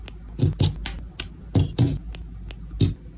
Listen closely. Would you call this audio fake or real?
real